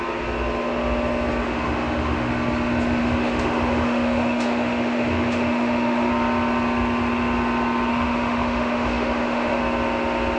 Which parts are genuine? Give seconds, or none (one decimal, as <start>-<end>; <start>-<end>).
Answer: 0.0-1.4; 2.3-3.0; 6.1-7.9; 9.6-10.4